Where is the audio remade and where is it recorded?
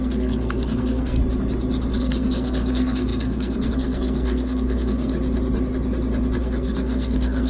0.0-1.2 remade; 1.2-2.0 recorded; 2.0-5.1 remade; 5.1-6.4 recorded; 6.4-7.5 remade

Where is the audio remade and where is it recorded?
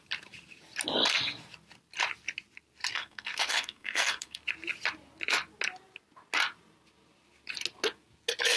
0.0-2.9 recorded; 2.9-4.4 remade; 4.4-8.6 recorded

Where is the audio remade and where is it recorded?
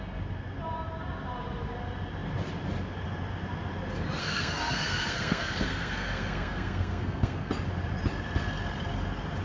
0.0-4.2 recorded; 4.2-7.5 remade; 7.5-9.4 recorded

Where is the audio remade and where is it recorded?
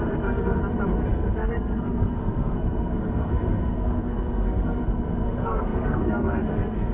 0.0-0.6 remade; 0.6-1.1 recorded; 1.1-6.9 remade